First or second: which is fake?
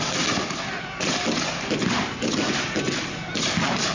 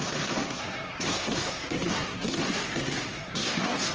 second